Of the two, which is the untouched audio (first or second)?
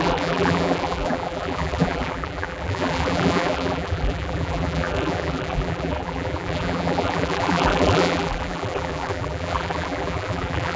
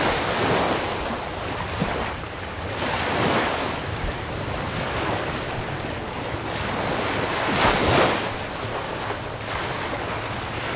second